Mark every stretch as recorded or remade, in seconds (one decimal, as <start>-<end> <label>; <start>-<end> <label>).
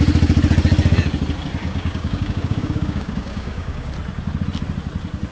0.0-1.6 recorded; 1.6-3.9 remade; 3.9-5.3 recorded